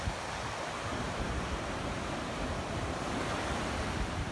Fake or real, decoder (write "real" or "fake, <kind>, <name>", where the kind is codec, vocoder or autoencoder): real